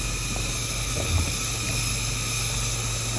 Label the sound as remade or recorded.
recorded